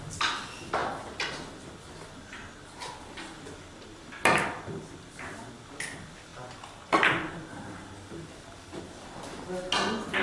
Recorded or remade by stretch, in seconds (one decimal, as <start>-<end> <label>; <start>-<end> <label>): 0.0-10.2 recorded